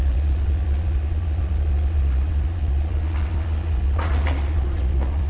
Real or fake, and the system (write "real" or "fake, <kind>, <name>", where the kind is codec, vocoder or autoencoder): fake, vocoder, Vocos